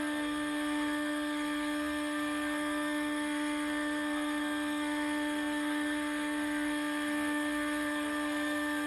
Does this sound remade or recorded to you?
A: remade